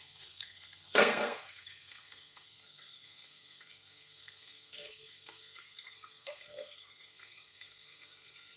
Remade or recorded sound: remade